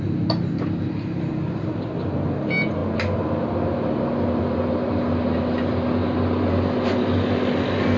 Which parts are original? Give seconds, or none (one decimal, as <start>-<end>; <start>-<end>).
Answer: 0.0-8.0